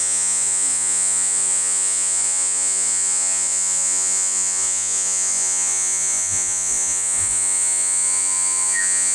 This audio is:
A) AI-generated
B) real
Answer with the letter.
A